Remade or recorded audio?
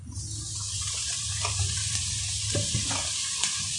remade